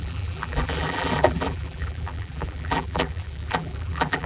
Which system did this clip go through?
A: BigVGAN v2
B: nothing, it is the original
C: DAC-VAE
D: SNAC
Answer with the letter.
A